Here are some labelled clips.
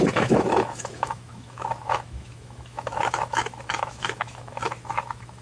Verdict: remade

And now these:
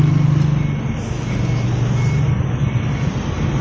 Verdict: recorded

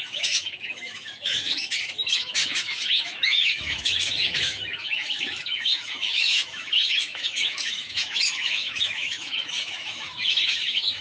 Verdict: remade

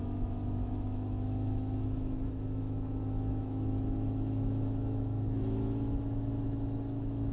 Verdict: remade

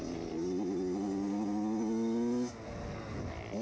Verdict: recorded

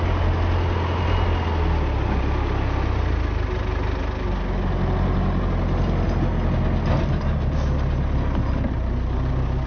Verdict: recorded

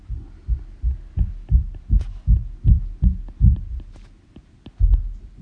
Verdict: recorded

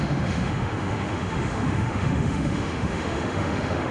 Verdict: remade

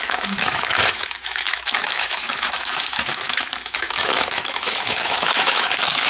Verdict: remade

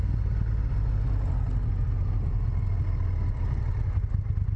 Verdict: recorded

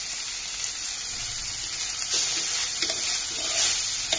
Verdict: recorded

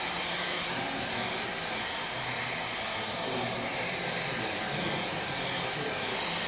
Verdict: recorded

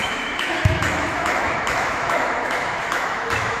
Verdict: remade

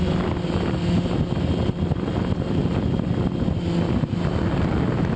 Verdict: recorded